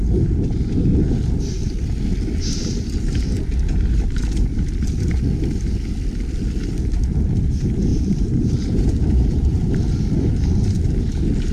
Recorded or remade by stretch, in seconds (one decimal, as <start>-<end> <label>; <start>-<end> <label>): 0.0-7.9 recorded; 7.9-11.1 remade; 11.1-11.5 recorded